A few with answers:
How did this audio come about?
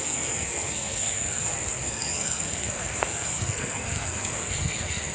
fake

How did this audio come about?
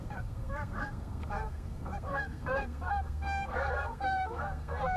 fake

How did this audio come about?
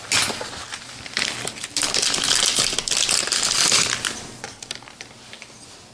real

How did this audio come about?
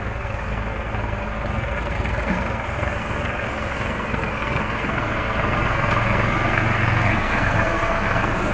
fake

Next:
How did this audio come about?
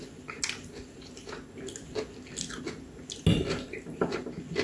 real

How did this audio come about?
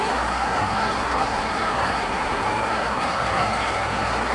fake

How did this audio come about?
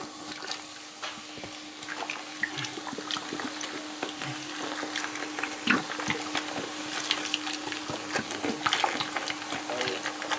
real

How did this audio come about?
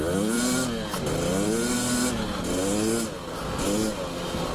real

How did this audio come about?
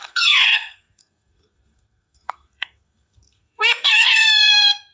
fake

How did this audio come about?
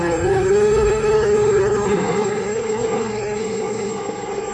fake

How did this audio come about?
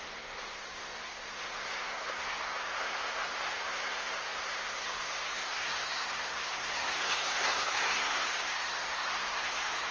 fake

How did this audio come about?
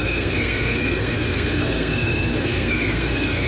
fake